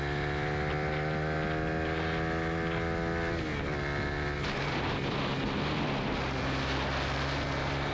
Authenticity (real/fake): real